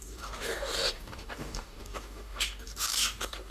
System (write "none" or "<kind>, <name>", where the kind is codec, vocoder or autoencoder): codec, DAC